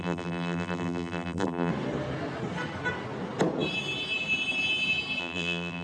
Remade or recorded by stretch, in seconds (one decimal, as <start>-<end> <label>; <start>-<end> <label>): 0.0-1.7 remade; 1.7-5.2 recorded; 5.2-5.8 remade